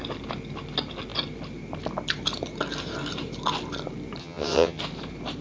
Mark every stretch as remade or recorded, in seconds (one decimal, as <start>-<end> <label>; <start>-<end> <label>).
0.0-4.2 recorded; 4.2-4.8 remade; 4.8-5.4 recorded